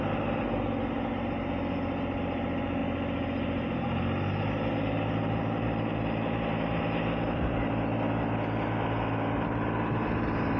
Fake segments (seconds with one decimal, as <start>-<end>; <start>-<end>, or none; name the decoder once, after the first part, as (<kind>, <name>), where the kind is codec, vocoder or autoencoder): none